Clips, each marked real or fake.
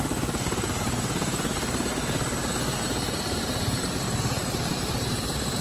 fake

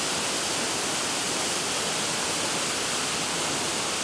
real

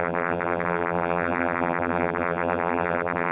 fake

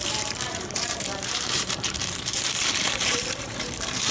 fake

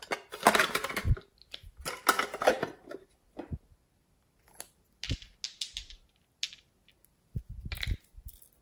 real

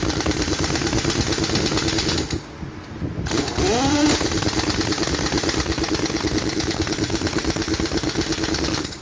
real